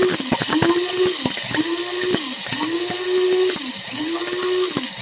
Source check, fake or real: real